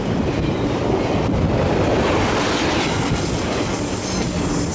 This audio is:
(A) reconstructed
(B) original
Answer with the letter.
B